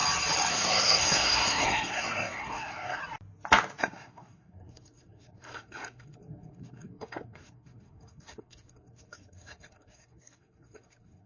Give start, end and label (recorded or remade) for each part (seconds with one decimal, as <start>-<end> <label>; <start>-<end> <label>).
0.0-0.5 recorded; 0.5-3.0 remade; 3.0-3.8 recorded; 3.8-11.3 remade